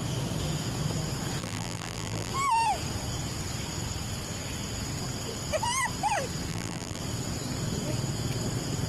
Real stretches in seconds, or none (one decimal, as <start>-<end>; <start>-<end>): 0.0-1.4; 2.3-6.5; 7.0-8.9

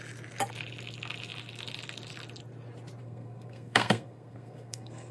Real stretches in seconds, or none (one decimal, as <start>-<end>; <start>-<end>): 0.0-3.0

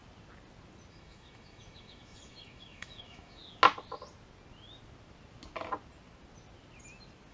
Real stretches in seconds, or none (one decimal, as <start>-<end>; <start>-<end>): 0.0-0.9; 3.4-7.3

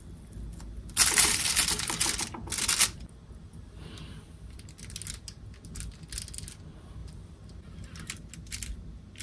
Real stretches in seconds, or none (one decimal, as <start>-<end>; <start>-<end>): 0.0-9.2